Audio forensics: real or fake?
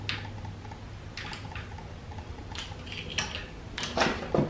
real